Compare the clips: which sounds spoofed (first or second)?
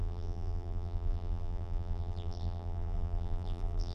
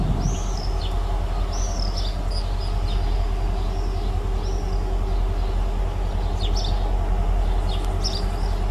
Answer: first